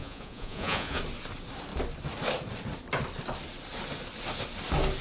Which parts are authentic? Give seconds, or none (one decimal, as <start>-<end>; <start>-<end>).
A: 1.0-5.0